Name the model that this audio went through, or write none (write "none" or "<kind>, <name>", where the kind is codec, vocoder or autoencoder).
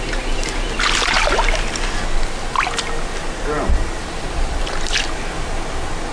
none